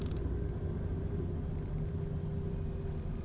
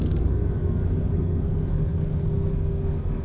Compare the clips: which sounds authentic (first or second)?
first